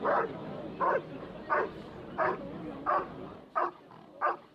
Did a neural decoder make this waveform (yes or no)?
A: no